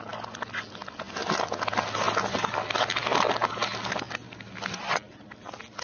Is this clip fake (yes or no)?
no